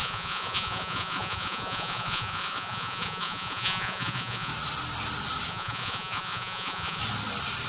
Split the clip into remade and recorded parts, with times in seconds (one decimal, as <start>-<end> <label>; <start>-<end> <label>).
0.0-4.5 remade; 4.5-5.5 recorded; 5.5-7.0 remade; 7.0-7.7 recorded